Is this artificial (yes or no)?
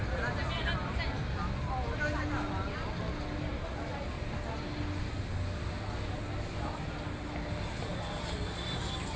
no